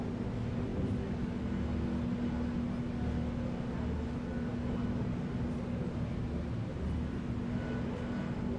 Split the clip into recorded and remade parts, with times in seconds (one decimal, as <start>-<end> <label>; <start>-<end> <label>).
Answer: 0.0-8.6 recorded